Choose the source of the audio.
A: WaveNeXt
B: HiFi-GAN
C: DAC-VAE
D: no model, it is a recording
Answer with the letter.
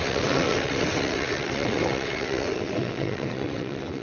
A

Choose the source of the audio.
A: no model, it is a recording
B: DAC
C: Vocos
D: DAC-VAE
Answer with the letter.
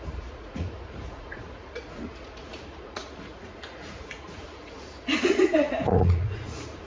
C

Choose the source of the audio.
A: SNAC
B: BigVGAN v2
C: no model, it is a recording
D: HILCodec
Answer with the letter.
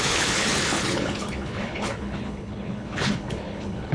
D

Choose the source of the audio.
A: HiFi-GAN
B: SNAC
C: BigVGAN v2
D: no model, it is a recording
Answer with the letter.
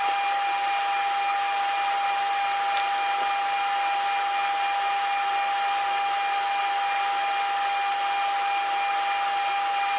D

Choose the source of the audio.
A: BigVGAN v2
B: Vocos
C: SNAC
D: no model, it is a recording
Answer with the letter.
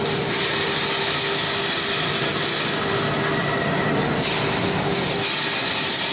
D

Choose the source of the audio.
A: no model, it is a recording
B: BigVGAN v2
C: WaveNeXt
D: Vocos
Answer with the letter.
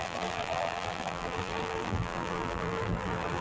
B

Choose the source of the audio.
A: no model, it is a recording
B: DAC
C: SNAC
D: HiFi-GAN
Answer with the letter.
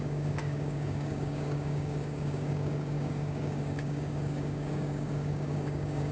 B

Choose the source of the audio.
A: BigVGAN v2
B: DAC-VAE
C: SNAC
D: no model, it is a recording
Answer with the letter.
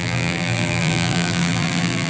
A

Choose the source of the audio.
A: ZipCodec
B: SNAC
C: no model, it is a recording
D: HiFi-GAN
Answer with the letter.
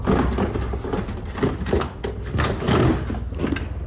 C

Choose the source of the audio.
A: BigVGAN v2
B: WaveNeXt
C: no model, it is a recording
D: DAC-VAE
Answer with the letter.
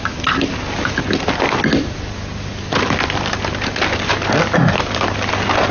C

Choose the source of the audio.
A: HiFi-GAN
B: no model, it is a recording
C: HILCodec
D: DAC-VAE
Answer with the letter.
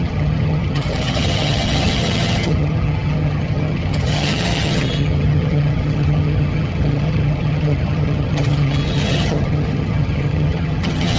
A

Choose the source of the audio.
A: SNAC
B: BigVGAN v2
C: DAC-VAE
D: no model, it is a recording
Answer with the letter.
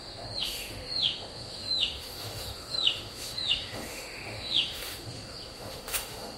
C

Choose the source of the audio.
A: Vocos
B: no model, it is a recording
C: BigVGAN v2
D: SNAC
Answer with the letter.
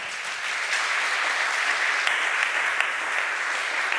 B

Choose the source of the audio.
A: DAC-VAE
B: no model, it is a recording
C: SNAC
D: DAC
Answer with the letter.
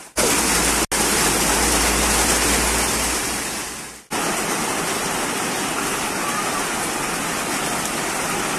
B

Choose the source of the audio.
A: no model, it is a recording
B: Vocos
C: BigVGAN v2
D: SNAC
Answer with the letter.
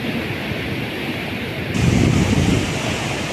A